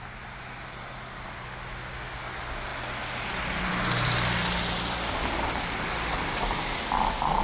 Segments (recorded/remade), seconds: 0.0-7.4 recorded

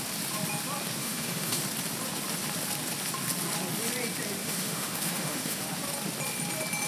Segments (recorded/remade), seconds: 0.0-1.0 recorded; 1.0-1.6 remade; 1.6-4.4 recorded; 4.4-5.6 remade; 5.6-6.9 recorded

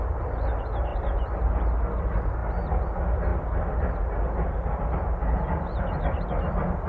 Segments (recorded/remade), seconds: 0.0-6.9 recorded